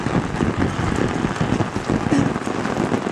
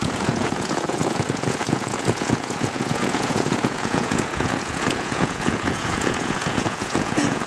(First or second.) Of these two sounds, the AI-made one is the second